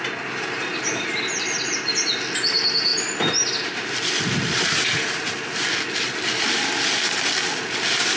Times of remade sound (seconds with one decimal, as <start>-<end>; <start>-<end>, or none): none